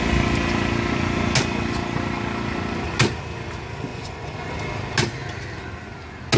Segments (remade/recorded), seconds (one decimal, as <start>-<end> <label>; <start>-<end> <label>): 0.0-3.9 recorded; 3.9-4.5 remade; 4.5-6.4 recorded